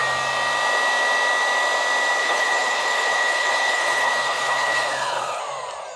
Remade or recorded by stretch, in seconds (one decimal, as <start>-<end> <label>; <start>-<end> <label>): 0.0-2.2 recorded; 2.2-5.4 remade; 5.4-6.0 recorded